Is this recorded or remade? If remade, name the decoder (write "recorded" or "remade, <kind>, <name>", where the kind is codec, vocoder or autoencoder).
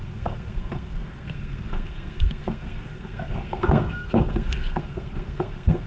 remade, codec, SNAC